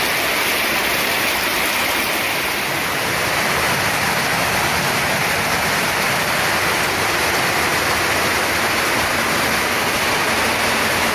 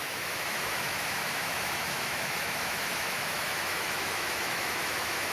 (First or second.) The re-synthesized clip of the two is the second